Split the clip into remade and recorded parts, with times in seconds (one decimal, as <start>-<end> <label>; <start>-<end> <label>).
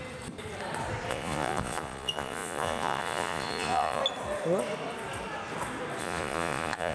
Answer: 0.0-1.1 recorded; 1.1-4.0 remade; 4.0-6.0 recorded; 6.0-6.9 remade